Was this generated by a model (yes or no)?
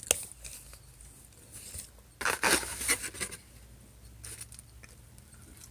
no